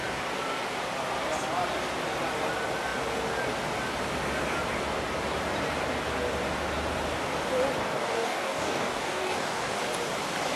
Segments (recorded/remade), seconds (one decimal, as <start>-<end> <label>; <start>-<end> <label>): 0.0-7.8 recorded; 7.8-9.8 remade; 9.8-10.6 recorded